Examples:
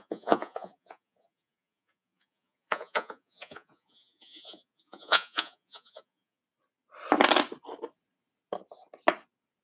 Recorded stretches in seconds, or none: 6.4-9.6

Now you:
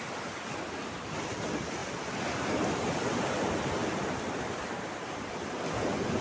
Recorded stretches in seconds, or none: 0.0-6.2